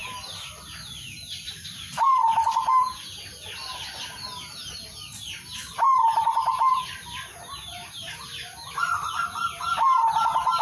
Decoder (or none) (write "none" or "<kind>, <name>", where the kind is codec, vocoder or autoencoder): none